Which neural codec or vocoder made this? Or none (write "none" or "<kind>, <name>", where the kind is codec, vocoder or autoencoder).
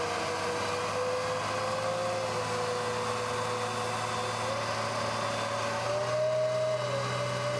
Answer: none